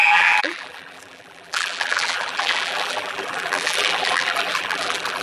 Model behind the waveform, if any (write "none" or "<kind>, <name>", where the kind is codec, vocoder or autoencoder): vocoder, BigVGAN v2